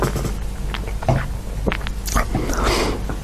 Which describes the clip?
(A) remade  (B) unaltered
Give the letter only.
B